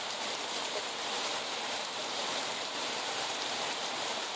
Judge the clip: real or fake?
fake